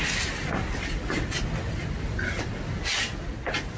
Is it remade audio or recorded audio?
recorded